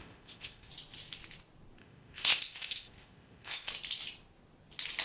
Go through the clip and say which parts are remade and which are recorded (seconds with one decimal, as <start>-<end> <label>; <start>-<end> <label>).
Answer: 0.0-0.7 remade; 0.7-1.8 recorded; 1.8-3.7 remade; 3.7-5.0 recorded